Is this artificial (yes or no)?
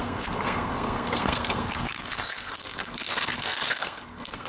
yes